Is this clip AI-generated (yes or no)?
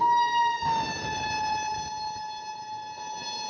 no